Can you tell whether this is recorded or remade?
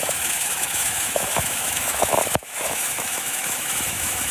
remade